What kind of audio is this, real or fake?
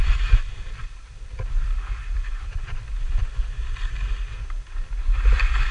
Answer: real